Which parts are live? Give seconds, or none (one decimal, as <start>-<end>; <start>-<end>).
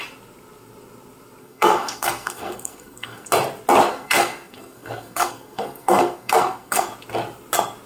0.0-1.4; 3.3-3.9; 6.9-7.9